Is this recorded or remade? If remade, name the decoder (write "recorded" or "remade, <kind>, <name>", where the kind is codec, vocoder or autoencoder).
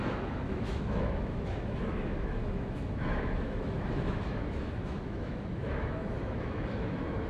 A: remade, autoencoder, DAC-VAE